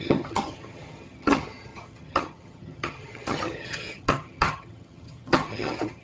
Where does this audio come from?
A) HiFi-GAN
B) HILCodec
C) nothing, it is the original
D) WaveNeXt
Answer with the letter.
A